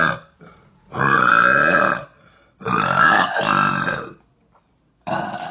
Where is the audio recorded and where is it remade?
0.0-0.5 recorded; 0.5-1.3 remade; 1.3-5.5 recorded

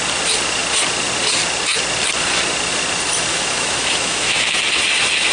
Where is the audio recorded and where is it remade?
0.0-3.3 recorded; 3.3-4.6 remade; 4.6-5.3 recorded